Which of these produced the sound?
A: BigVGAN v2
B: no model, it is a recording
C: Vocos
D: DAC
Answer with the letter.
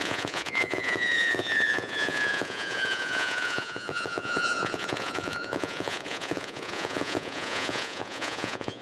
C